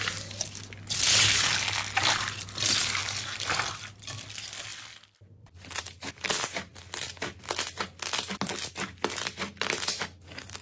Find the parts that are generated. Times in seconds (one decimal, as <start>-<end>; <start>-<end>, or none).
3.0-4.0; 4.7-5.8